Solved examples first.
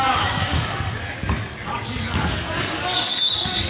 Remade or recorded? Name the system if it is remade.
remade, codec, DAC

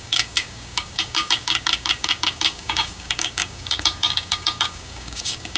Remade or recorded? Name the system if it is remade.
remade, codec, DAC